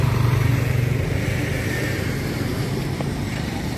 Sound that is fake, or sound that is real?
fake